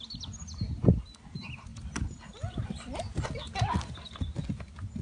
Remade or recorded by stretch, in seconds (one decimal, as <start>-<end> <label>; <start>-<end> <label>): 0.0-5.0 recorded